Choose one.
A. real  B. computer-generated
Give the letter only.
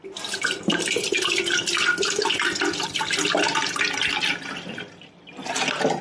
A